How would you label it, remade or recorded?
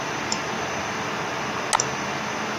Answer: recorded